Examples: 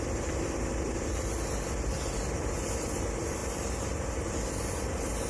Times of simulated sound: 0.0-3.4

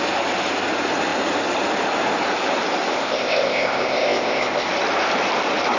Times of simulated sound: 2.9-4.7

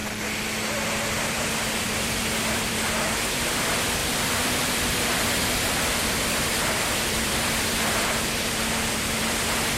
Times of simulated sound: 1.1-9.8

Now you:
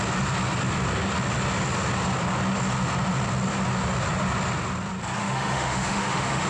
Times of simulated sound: 5.2-6.5